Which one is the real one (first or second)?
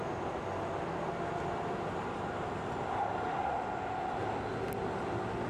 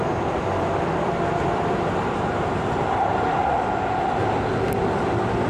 first